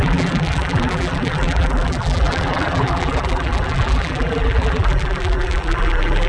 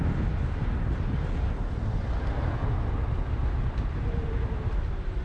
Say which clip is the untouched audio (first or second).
second